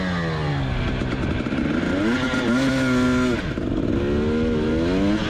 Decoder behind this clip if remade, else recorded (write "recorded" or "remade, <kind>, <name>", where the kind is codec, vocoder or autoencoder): recorded